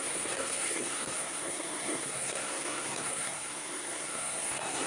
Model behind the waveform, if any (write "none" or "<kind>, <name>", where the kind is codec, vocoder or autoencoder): codec, SNAC